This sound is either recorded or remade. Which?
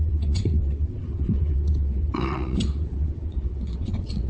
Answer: remade